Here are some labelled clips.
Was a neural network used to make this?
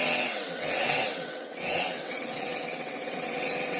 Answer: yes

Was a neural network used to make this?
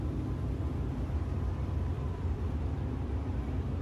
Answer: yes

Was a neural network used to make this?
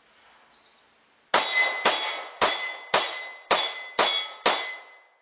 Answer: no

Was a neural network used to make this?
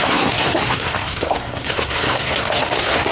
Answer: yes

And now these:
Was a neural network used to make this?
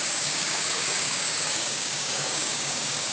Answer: yes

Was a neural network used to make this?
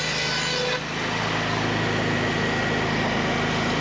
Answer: no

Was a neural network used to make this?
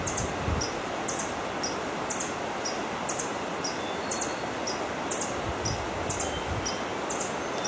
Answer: no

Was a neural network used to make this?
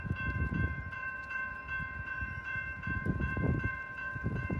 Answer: yes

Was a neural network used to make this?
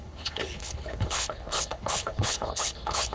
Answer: yes